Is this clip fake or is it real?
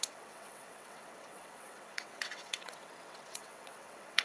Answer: fake